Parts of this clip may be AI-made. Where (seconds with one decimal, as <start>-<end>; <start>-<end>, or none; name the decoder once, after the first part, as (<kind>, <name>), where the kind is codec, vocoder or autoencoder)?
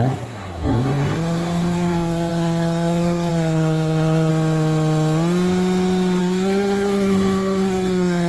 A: 0.0-4.3 (codec, SNAC); 6.2-8.3